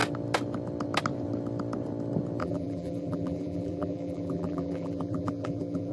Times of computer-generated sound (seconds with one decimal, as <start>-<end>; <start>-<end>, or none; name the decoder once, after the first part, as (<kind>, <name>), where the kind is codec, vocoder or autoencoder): 2.4-5.9 (vocoder, BigVGAN v2)